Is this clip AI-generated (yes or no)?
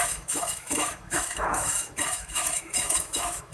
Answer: yes